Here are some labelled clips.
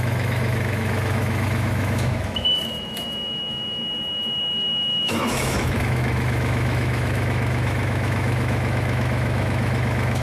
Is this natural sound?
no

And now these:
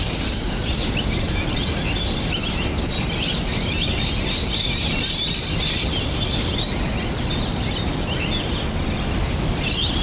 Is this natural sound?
yes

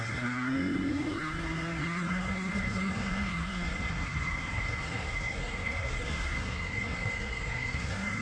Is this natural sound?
no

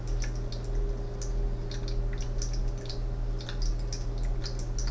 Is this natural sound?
yes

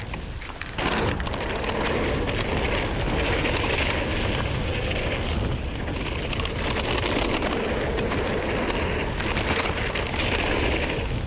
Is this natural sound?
yes